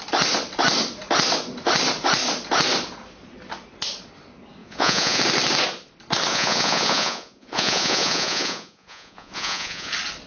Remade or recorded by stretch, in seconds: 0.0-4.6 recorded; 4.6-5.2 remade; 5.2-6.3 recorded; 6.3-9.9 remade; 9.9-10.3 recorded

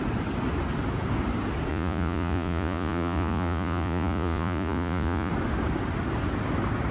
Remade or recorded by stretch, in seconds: 0.0-1.7 recorded; 1.7-5.3 remade; 5.3-6.9 recorded

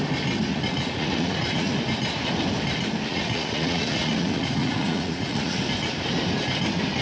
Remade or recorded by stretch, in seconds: 0.0-0.5 recorded; 0.5-1.7 remade; 1.7-3.1 recorded; 3.1-5.6 remade; 5.6-7.0 recorded

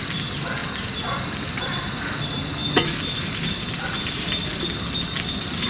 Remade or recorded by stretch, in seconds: 0.0-5.7 recorded

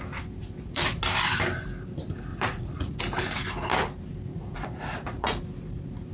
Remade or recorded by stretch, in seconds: 0.0-0.4 recorded; 0.4-1.0 remade; 1.0-2.3 recorded; 2.3-3.0 remade; 3.0-4.3 recorded; 4.3-5.4 remade; 5.4-6.1 recorded

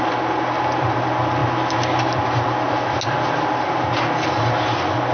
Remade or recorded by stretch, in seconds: 0.0-5.1 recorded

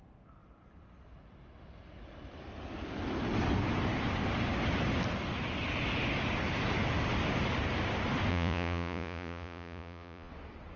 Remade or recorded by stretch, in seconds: 0.0-8.3 recorded; 8.3-10.3 remade; 10.3-10.8 recorded

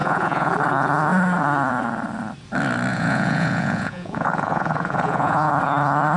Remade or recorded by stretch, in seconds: 0.0-0.5 remade; 0.5-2.9 recorded; 2.9-5.5 remade; 5.5-6.2 recorded